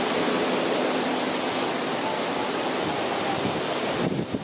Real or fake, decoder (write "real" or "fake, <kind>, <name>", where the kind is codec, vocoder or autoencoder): real